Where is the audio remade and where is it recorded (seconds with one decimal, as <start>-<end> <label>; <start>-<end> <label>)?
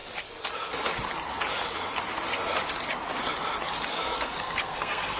0.0-3.9 recorded; 3.9-5.2 remade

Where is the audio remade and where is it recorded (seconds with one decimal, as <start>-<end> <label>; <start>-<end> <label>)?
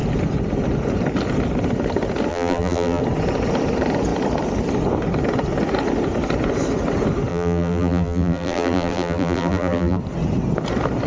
0.0-2.3 recorded; 2.3-3.0 remade; 3.0-7.3 recorded; 7.3-10.0 remade; 10.0-11.1 recorded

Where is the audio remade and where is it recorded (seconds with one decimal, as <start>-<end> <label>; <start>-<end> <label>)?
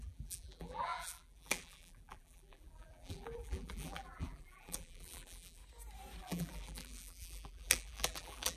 0.0-5.6 remade; 5.6-6.2 recorded; 6.2-8.6 remade